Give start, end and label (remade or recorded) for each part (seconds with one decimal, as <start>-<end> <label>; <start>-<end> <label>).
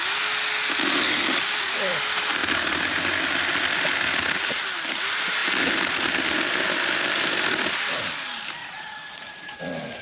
0.0-8.6 recorded; 8.6-9.6 remade; 9.6-10.0 recorded